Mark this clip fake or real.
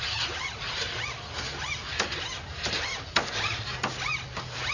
real